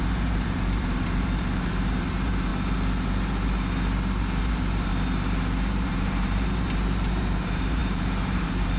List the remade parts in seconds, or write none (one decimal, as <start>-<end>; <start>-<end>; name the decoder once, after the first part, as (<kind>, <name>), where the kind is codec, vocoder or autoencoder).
0.0-2.5 (vocoder, BigVGAN v2); 4.4-4.9; 5.7-8.8